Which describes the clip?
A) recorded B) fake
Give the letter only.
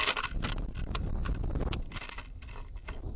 A